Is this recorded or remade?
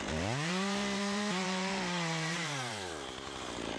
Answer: remade